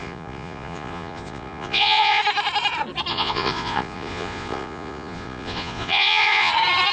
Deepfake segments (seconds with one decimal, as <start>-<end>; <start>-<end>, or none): 0.0-2.2; 3.1-6.5